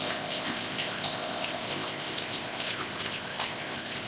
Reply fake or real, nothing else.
fake